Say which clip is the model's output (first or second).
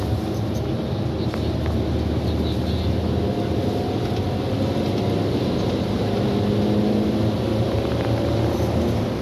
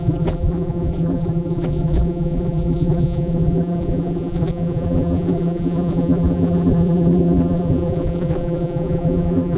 second